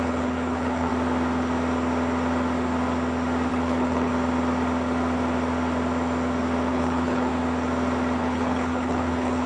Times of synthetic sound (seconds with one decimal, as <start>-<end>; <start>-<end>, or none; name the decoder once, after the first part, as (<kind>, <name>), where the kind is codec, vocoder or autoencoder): 0.0-0.9 (codec, HILCodec); 3.5-4.1; 6.7-7.3; 8.2-9.5